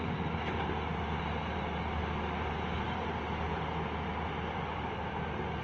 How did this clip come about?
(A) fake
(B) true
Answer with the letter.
B